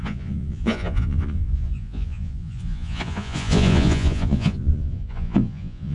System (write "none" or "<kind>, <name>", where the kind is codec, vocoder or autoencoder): vocoder, Vocos